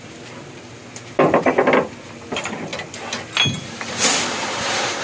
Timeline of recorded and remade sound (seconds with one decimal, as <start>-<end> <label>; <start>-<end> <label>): 0.0-5.0 recorded